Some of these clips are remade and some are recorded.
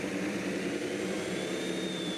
remade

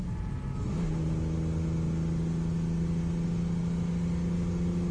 recorded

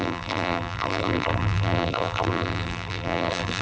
remade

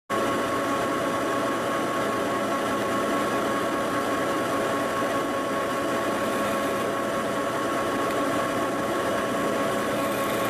recorded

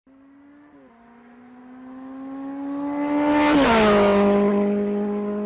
recorded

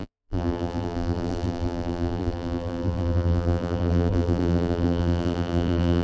remade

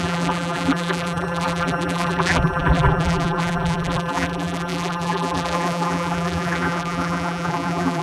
remade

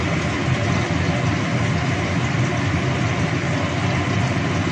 recorded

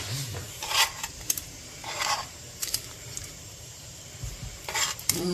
remade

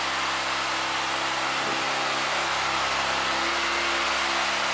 recorded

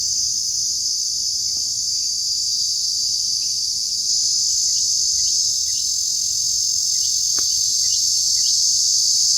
recorded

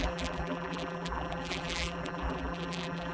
remade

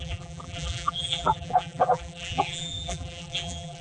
remade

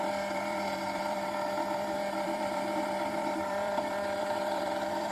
remade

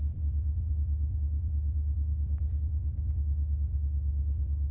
remade